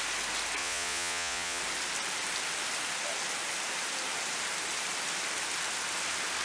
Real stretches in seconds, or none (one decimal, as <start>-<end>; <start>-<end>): 0.0-0.6; 1.6-6.4